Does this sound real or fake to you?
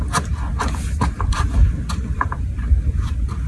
real